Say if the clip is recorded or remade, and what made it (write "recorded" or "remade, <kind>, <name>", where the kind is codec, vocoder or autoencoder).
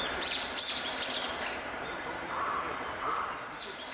remade, vocoder, BigVGAN v2